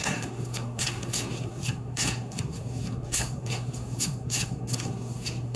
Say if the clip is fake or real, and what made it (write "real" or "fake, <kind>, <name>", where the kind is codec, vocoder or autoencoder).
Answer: fake, codec, SNAC